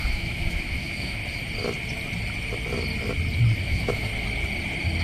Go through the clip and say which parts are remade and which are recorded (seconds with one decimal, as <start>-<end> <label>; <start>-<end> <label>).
0.0-1.2 remade; 1.2-3.6 recorded; 3.6-4.1 remade; 4.1-5.0 recorded